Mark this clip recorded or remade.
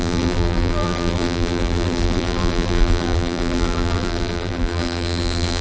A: remade